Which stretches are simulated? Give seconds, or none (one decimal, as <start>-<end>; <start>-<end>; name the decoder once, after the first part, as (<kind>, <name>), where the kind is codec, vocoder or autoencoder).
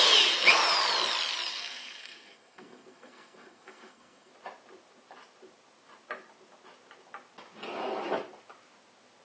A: 1.5-4.3 (codec, SNAC)